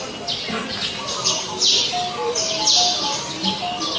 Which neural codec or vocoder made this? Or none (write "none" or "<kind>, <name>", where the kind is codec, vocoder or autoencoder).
none